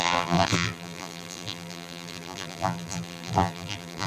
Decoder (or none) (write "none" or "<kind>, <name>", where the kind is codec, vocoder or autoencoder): vocoder, BigVGAN v2